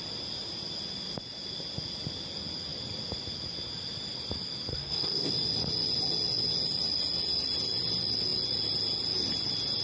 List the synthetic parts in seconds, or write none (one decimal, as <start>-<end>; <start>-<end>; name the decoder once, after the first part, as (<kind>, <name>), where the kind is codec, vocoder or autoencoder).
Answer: 4.7-5.3 (codec, SNAC)